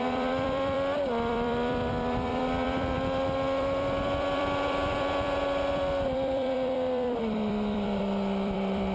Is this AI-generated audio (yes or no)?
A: yes